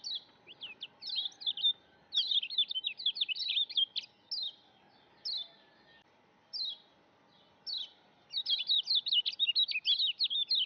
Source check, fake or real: real